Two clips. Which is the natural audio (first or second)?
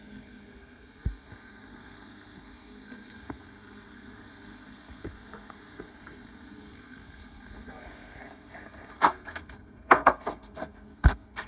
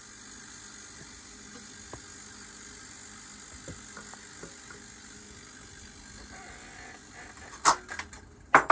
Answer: second